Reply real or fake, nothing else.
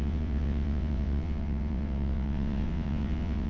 fake